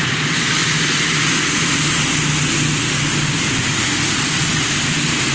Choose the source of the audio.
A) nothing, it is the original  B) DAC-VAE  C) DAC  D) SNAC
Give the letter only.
A